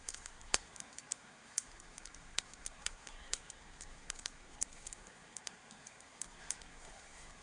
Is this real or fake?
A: fake